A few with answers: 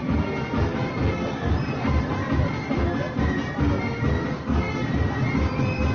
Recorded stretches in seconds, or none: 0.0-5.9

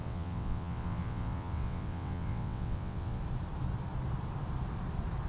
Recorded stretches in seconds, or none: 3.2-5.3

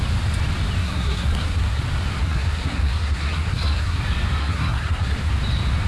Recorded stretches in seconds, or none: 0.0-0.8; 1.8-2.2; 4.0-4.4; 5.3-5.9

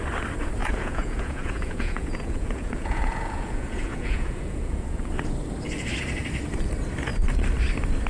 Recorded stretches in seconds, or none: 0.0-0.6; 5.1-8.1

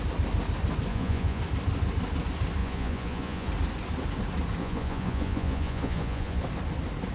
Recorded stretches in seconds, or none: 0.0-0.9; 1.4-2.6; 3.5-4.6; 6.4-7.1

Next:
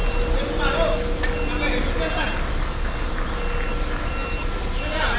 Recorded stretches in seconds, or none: 0.0-5.2

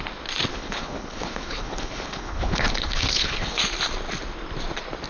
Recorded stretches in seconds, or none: 0.0-0.5; 3.6-5.1